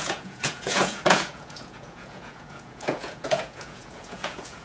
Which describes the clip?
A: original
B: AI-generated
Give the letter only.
B